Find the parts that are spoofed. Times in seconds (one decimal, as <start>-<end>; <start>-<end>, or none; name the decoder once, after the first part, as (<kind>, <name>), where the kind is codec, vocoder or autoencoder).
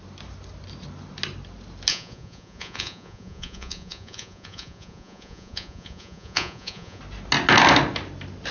1.9-7.0 (vocoder, Vocos)